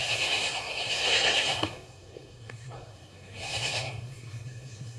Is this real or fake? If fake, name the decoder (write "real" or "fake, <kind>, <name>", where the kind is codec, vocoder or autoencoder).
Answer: fake, codec, SNAC